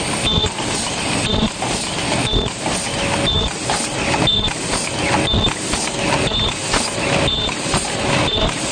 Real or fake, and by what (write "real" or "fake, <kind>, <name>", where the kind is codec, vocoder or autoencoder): real